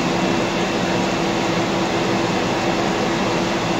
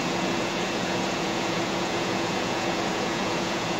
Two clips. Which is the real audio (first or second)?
first